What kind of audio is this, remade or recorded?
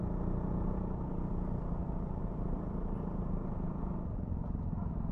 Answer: remade